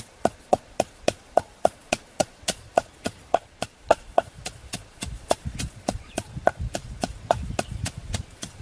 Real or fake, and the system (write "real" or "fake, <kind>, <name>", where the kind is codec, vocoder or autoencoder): fake, vocoder, Vocos